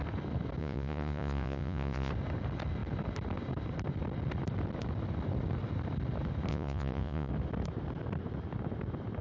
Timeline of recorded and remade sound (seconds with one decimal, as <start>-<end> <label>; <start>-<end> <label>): 0.0-0.6 recorded; 0.6-2.1 remade; 2.1-6.5 recorded; 6.5-7.3 remade; 7.3-9.2 recorded